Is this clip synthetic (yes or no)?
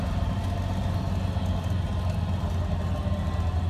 no